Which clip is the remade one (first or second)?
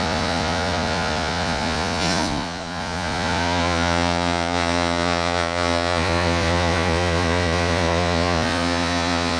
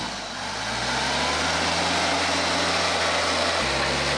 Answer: first